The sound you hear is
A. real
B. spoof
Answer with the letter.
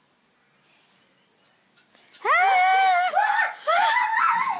A